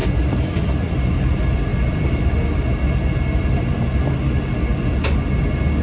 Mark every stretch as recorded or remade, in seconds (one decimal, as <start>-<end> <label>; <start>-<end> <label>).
0.0-0.7 remade; 0.7-1.7 recorded; 1.7-2.3 remade; 2.3-5.8 recorded